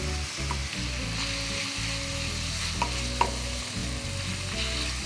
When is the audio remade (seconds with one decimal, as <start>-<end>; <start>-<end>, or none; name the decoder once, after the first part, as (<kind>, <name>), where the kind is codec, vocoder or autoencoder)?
none